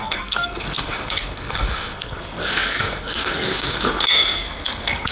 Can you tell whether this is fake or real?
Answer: fake